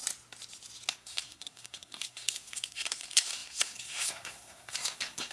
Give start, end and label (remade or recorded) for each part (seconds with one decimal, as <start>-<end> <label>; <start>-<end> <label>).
0.0-0.9 recorded; 0.9-5.3 remade

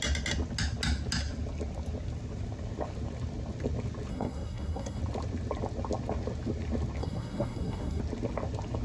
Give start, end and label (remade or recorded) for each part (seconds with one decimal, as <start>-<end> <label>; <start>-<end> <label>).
0.0-4.1 recorded; 4.1-5.0 remade; 5.0-7.0 recorded; 7.0-8.0 remade; 8.0-8.8 recorded

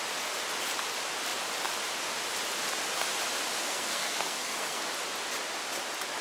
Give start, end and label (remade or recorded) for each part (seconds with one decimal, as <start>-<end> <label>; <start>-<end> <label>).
0.0-3.6 recorded; 3.6-4.8 remade; 4.8-6.2 recorded

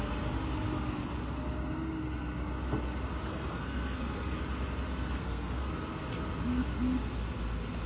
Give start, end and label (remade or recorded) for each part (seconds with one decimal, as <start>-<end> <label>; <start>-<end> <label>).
0.0-3.3 recorded; 3.3-4.4 remade; 4.4-5.2 recorded; 5.2-5.7 remade; 5.7-7.9 recorded

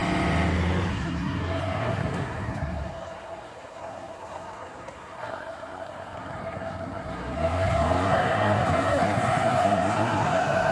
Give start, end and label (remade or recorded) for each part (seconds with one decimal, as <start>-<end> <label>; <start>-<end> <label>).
0.0-0.9 recorded; 0.9-10.7 remade